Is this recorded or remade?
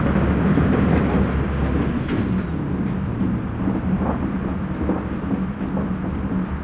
recorded